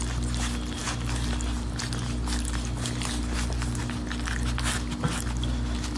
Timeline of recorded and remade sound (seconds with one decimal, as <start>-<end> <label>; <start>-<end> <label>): 0.0-6.0 recorded